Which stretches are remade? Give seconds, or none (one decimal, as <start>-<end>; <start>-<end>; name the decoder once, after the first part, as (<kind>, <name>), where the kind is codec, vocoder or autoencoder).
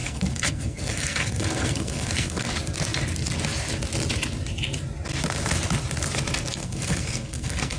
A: 0.0-2.5 (codec, SNAC); 6.6-7.8